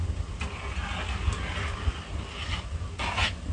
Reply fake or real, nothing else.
real